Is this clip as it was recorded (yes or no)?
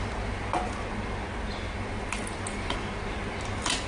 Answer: yes